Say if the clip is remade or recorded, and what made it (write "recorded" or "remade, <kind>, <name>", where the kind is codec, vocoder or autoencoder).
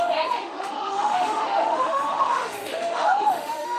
remade, autoencoder, DAC-VAE